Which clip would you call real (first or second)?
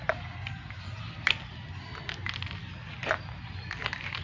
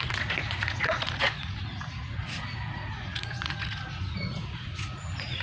first